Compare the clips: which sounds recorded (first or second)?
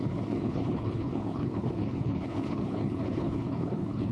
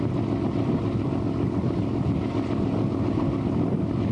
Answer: second